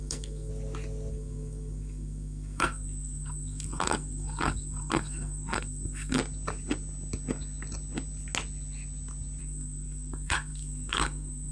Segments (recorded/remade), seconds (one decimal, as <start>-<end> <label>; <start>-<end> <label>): 0.0-0.5 remade; 0.5-1.1 recorded; 1.1-6.2 remade; 6.2-9.4 recorded; 9.4-11.5 remade